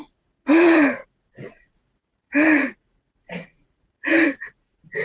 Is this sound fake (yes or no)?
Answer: yes